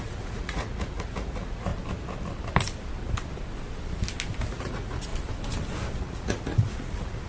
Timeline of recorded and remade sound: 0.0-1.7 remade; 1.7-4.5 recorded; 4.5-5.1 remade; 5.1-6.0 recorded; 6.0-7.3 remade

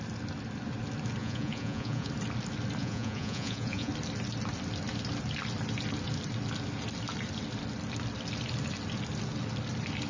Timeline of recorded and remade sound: 0.0-1.2 recorded; 1.2-2.1 remade; 2.1-2.8 recorded; 2.8-3.9 remade; 3.9-10.1 recorded